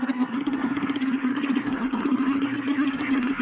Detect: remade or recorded remade